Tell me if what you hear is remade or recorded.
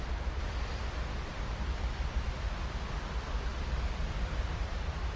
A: remade